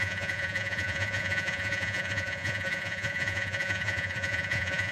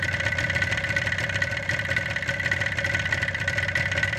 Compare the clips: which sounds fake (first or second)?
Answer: first